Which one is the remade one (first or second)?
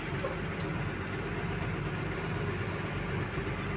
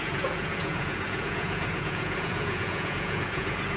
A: second